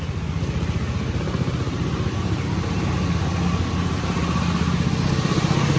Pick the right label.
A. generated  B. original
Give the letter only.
B